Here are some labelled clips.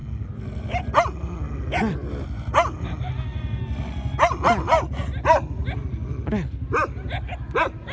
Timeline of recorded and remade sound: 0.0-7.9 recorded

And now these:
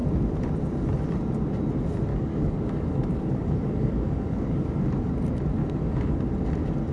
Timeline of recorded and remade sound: 0.0-2.1 recorded; 2.1-5.1 remade; 5.1-5.6 recorded; 5.6-6.2 remade; 6.2-6.9 recorded

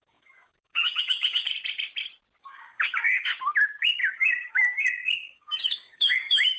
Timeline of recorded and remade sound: 0.0-1.5 remade; 1.5-2.4 recorded; 2.4-3.3 remade; 3.3-3.8 recorded; 3.8-6.6 remade

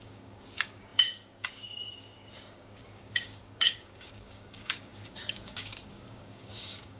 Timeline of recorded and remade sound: 0.0-7.0 remade

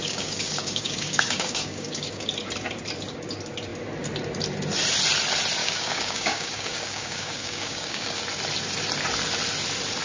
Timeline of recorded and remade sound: 0.0-2.3 remade; 2.3-5.6 recorded; 5.6-8.2 remade; 8.2-10.0 recorded

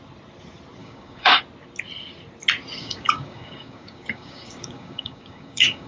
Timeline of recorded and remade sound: 0.0-0.8 recorded; 0.8-1.4 remade; 1.4-2.8 recorded; 2.8-5.9 remade

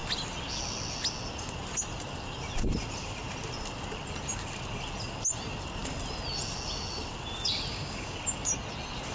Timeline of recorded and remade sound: 0.0-7.7 recorded; 7.7-8.2 remade; 8.2-9.1 recorded

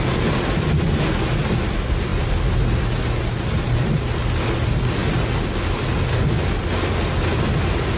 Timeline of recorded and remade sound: 0.0-8.0 recorded